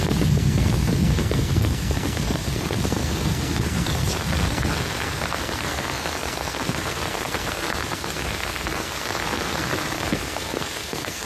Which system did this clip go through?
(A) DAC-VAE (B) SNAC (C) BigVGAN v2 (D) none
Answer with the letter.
B